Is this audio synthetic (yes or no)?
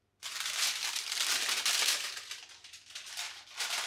no